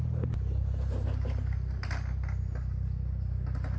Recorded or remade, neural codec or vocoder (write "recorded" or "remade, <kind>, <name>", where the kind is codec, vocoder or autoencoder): recorded